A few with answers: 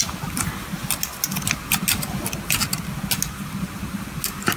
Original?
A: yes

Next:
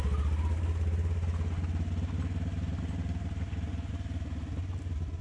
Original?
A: yes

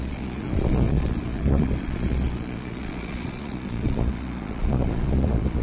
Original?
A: no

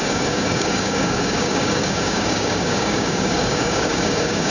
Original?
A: no